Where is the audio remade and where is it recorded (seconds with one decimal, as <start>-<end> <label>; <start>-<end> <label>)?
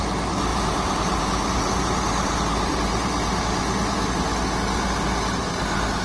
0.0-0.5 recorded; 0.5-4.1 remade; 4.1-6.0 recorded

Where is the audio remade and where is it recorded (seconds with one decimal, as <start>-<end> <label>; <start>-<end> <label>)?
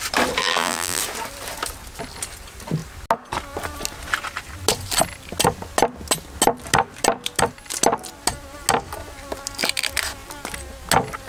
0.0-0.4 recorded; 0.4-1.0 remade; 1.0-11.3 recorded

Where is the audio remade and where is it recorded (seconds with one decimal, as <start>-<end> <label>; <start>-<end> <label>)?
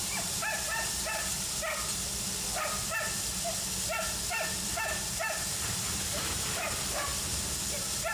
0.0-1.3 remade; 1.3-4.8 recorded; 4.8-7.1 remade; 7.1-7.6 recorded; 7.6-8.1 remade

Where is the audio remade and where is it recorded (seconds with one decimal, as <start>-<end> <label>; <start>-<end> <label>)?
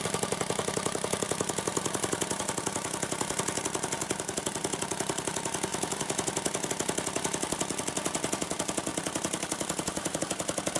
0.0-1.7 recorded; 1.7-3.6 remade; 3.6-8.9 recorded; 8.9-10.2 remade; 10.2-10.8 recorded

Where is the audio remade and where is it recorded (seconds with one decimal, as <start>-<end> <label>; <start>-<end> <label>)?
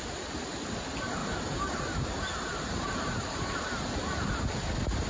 0.0-1.2 recorded; 1.2-4.3 remade; 4.3-5.1 recorded